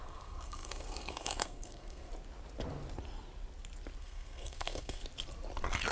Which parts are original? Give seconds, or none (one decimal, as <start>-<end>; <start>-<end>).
2.1-4.0; 5.0-5.9